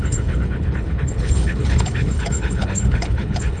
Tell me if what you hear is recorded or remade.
remade